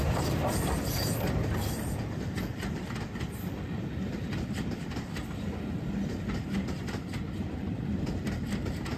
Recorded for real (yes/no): no